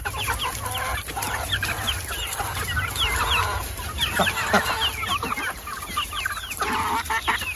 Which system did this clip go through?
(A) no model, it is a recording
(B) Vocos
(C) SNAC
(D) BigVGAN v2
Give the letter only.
A